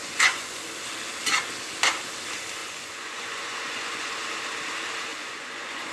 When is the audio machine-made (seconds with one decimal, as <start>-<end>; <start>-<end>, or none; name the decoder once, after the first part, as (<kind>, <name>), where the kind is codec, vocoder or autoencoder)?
0.0-0.6 (vocoder, Vocos); 2.6-4.1; 5.1-5.9